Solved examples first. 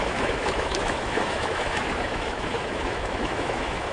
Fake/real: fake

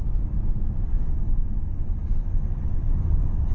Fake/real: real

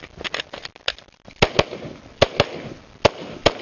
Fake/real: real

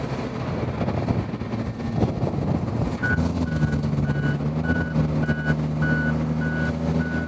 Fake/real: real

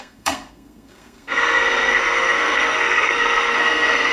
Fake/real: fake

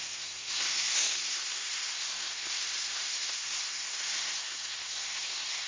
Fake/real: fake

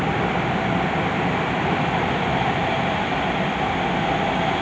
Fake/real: real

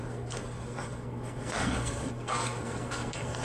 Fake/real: fake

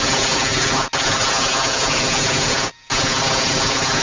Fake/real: real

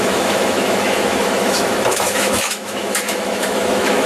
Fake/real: fake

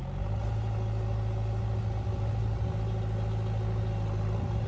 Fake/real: real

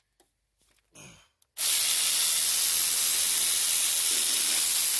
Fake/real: real